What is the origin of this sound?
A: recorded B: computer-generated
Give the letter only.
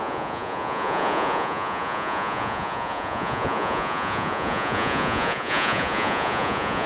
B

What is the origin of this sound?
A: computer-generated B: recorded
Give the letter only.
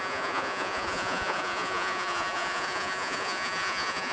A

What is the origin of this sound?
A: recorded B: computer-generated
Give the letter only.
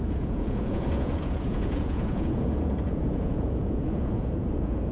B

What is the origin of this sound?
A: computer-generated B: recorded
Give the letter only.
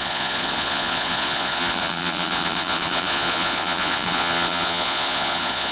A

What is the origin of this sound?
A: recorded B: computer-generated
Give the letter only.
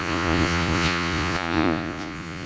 B